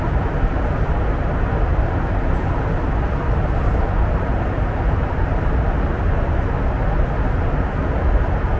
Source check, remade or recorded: recorded